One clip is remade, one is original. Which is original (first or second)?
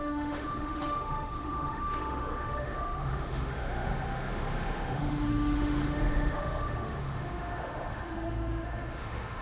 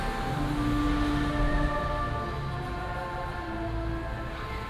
second